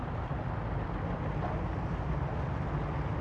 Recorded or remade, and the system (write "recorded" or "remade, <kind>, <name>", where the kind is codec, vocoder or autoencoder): recorded